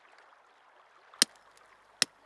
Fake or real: real